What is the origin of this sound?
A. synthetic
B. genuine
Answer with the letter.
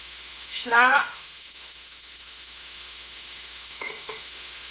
A